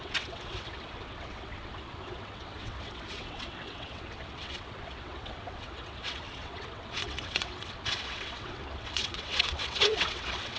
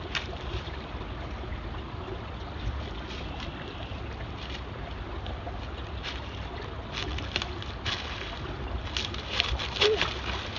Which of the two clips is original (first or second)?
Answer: second